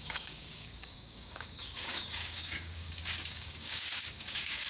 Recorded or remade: remade